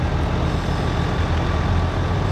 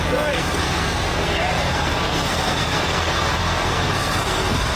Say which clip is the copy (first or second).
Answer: second